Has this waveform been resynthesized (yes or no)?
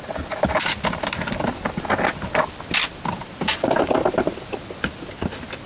no